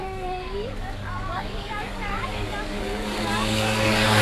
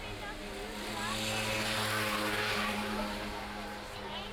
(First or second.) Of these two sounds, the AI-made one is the first